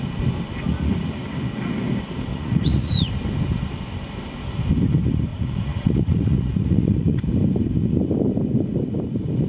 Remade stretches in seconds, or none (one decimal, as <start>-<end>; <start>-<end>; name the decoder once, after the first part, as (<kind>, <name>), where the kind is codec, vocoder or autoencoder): 2.3-3.1 (vocoder, Vocos); 5.3-7.2